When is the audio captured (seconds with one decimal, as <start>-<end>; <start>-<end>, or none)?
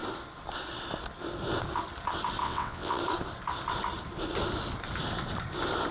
0.0-2.4; 3.0-5.9